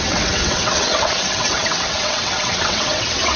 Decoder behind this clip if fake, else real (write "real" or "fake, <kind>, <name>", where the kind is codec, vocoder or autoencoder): fake, vocoder, WaveNeXt